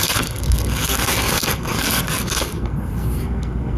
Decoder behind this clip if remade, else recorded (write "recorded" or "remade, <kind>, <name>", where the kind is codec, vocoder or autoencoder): remade, codec, SNAC